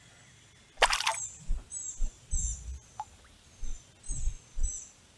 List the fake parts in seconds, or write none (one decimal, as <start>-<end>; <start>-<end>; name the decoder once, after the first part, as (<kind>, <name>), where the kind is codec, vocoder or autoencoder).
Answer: none